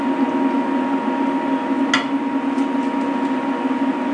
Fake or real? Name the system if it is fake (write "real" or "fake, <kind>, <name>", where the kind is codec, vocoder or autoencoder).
real